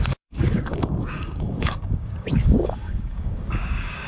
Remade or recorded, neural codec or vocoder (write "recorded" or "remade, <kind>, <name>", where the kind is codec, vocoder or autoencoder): remade, codec, DAC